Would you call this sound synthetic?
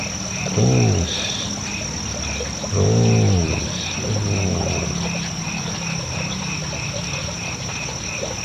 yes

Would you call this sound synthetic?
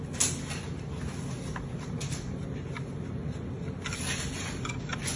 no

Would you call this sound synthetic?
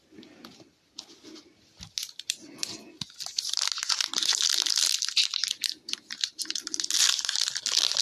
no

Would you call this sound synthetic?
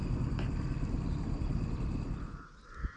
no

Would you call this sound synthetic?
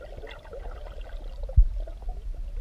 no